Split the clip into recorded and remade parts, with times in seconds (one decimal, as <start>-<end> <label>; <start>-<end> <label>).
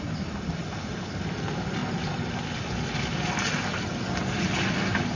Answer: 0.0-5.2 recorded